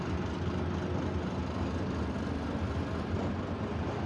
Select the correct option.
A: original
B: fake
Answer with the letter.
A